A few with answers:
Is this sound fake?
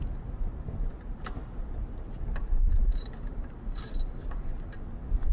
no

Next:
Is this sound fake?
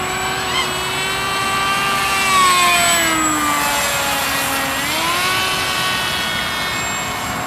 no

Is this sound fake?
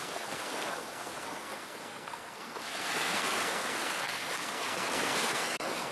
yes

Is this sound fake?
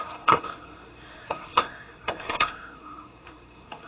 yes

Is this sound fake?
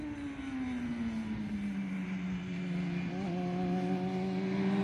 no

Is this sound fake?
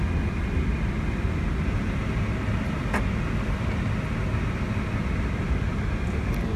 no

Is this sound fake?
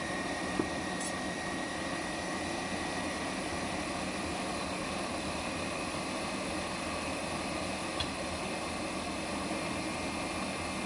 no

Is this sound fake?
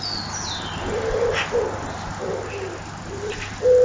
no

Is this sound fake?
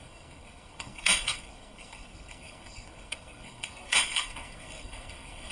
yes